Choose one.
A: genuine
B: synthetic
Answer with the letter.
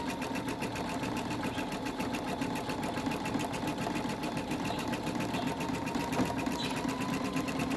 A